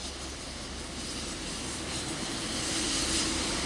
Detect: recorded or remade recorded